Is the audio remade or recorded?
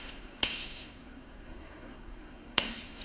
remade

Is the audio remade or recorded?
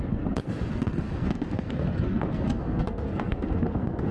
remade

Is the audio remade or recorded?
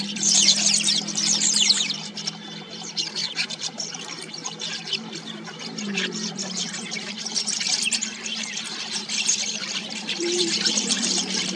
remade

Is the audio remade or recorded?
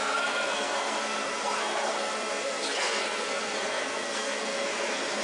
remade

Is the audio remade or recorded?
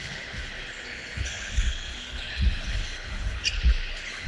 remade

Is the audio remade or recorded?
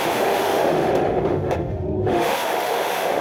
remade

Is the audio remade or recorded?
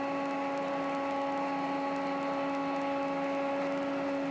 recorded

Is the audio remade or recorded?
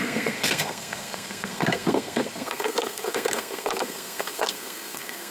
remade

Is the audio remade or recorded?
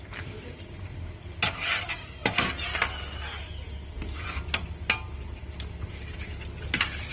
recorded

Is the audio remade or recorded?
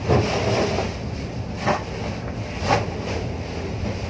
recorded